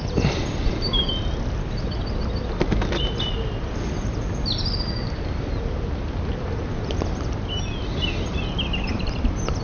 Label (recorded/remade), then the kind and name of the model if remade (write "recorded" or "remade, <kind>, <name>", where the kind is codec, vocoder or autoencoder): recorded